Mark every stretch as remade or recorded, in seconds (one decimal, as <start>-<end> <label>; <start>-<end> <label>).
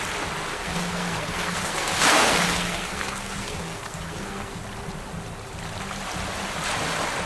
0.0-0.5 recorded; 0.5-4.6 remade; 4.6-7.3 recorded